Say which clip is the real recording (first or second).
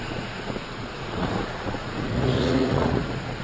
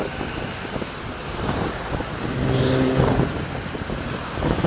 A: second